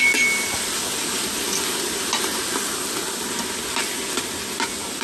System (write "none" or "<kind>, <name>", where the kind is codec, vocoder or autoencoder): none